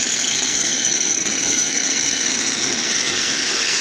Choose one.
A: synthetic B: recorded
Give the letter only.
A